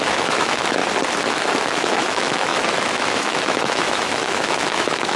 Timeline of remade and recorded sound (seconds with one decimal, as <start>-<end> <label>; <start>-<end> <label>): 0.0-0.8 remade; 0.8-1.3 recorded; 1.3-5.2 remade